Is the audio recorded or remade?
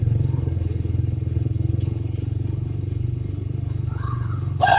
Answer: remade